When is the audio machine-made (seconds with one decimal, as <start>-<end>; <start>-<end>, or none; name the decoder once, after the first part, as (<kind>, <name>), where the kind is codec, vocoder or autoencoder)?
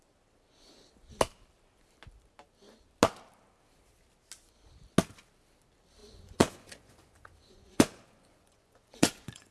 6.0-9.5 (vocoder, Vocos)